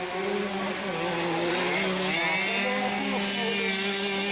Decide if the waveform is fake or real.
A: real